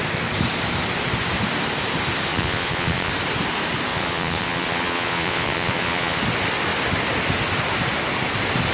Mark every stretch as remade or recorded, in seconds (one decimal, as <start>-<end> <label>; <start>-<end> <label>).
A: 0.0-2.3 recorded; 2.3-3.1 remade; 3.1-3.9 recorded; 3.9-6.2 remade; 6.2-8.7 recorded